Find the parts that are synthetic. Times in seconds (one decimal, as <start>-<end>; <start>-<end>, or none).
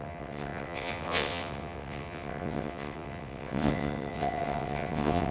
0.0-5.3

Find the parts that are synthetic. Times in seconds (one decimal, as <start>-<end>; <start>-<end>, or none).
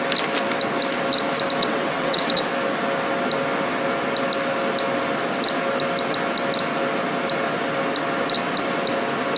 1.6-2.5